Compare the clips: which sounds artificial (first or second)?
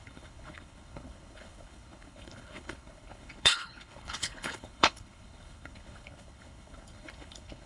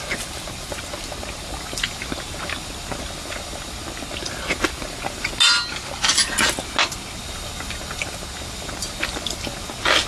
first